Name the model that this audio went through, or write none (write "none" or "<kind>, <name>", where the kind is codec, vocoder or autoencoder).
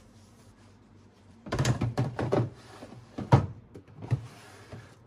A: vocoder, BigVGAN v2